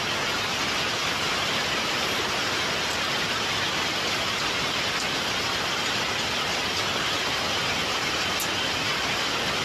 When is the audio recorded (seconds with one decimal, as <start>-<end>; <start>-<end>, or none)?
0.0-1.0; 2.2-9.6